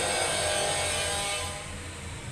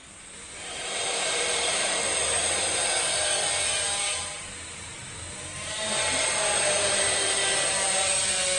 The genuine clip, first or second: first